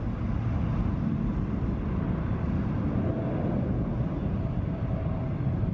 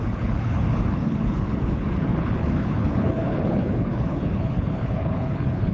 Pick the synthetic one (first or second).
second